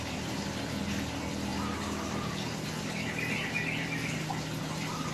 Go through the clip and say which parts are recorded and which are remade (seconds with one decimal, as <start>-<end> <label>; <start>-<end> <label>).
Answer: 0.0-5.1 recorded